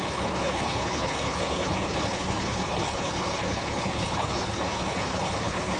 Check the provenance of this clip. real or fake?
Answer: fake